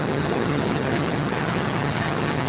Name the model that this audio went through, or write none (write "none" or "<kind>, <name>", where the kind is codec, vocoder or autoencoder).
vocoder, HiFi-GAN